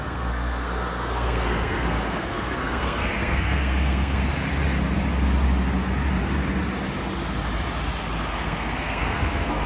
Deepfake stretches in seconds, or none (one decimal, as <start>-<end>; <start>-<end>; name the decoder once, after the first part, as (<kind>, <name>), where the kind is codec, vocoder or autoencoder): 0.0-4.2 (codec, SNAC); 8.3-9.7